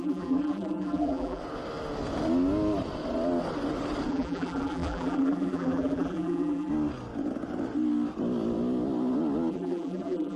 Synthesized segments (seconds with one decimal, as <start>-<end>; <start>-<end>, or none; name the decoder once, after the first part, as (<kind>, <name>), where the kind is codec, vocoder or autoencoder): 0.0-1.4 (vocoder, BigVGAN v2); 4.1-6.7; 9.5-10.4